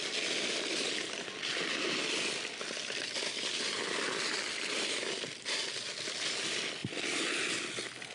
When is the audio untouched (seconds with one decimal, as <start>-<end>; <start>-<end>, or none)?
0.0-1.5; 4.9-6.8; 7.6-8.1